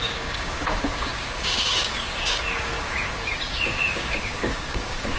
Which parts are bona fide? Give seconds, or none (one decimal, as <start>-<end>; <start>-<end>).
none